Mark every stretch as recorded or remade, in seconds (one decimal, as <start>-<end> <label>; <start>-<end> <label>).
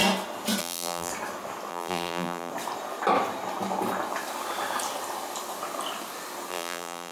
0.0-0.6 recorded; 0.6-1.1 remade; 1.1-1.7 recorded; 1.7-2.5 remade; 2.5-6.5 recorded; 6.5-7.1 remade